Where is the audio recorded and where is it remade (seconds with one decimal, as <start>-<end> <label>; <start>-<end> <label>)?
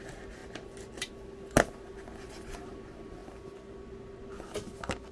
0.0-5.1 recorded